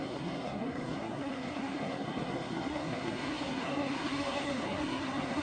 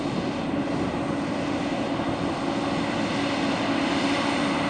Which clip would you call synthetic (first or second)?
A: first